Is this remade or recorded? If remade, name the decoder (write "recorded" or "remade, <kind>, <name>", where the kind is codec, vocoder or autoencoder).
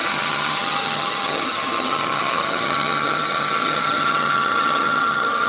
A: remade, vocoder, HiFi-GAN